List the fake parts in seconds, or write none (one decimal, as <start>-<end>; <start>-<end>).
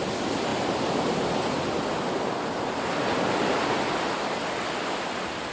0.5-3.8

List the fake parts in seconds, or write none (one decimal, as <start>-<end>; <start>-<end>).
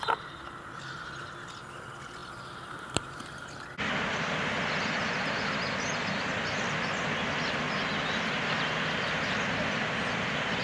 2.2-3.4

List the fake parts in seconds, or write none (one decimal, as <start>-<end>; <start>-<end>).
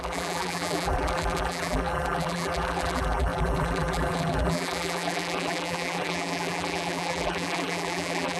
0.0-8.4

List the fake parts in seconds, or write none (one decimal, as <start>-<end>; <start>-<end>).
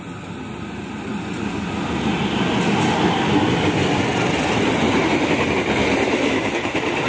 none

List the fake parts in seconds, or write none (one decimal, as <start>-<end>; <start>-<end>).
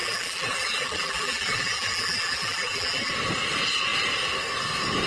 0.0-3.1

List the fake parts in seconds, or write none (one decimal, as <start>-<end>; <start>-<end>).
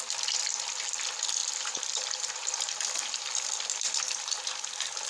1.4-4.5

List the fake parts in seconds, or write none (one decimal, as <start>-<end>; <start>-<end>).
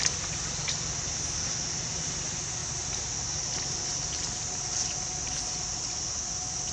none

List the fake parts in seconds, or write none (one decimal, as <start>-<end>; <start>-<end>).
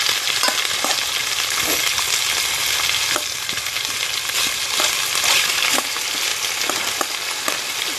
none